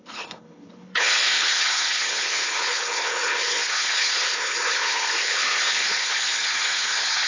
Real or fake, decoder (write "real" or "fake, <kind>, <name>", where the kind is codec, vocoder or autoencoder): fake, codec, HILCodec